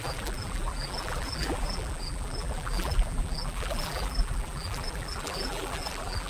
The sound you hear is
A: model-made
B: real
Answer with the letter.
A